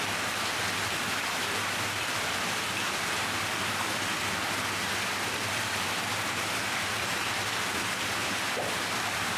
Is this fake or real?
fake